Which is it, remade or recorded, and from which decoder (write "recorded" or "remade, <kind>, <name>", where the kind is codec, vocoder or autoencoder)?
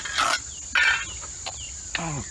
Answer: recorded